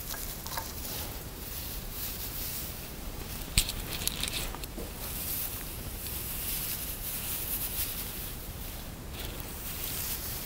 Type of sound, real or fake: fake